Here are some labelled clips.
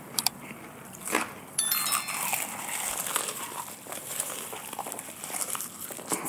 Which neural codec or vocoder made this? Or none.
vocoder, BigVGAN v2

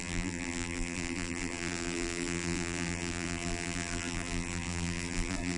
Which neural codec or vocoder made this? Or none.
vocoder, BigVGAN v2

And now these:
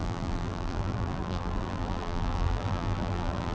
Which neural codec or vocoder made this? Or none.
vocoder, BigVGAN v2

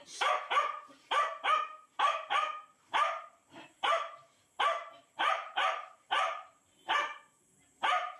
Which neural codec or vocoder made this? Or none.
vocoder, BigVGAN v2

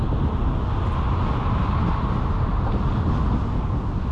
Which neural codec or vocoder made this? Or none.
none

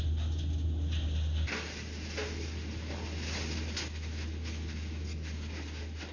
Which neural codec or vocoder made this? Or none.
none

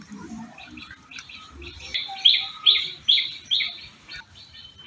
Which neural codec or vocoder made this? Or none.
vocoder, BigVGAN v2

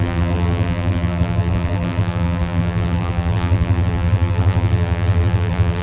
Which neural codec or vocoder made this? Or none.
vocoder, BigVGAN v2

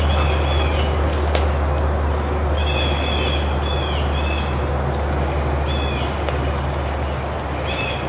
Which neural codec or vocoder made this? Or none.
none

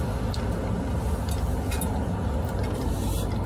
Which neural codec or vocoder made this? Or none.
none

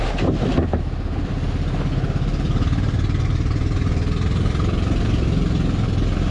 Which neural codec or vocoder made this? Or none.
none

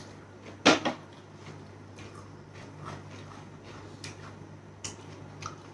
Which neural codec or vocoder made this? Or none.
none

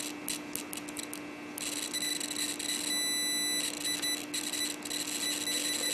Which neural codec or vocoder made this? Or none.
none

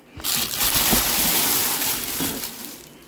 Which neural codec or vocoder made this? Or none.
none